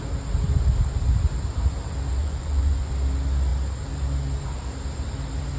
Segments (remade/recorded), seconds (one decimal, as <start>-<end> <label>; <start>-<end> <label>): 0.0-2.2 recorded; 2.2-2.9 remade; 2.9-5.6 recorded